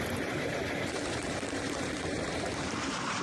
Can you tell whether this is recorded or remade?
remade